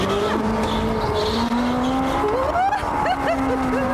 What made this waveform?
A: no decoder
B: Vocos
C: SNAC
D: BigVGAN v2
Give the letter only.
A